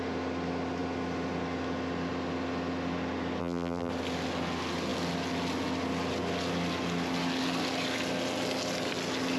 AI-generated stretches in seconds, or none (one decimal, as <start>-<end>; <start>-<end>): 3.4-3.9